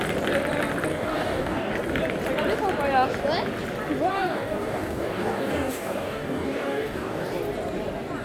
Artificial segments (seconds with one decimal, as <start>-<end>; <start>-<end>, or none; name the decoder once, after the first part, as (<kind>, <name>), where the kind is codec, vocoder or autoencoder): 0.9-1.7 (codec, DAC); 4.1-7.3